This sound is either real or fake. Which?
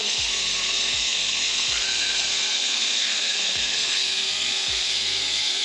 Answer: fake